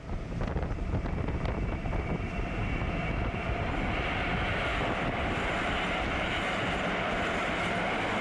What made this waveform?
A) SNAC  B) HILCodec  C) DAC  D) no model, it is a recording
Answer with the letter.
D